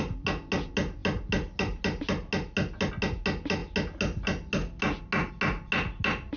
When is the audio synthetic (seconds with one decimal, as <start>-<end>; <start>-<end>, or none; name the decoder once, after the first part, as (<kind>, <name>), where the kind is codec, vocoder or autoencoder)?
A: none